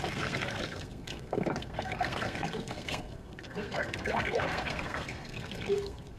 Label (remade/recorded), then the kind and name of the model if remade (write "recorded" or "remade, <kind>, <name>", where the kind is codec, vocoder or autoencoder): remade, codec, SNAC